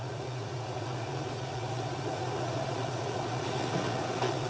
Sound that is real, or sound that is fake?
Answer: fake